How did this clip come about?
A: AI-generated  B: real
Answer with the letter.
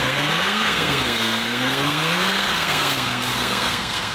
A